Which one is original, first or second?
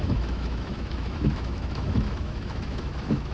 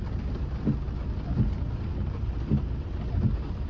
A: second